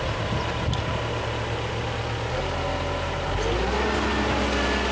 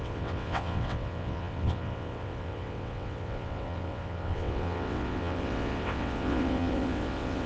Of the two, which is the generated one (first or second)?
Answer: second